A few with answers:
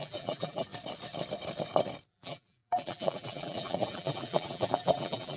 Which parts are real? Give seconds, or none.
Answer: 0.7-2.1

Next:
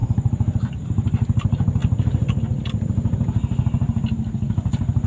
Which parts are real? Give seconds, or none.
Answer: 0.0-5.1

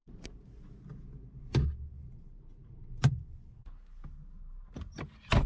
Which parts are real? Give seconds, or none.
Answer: 0.8-1.9; 3.1-5.5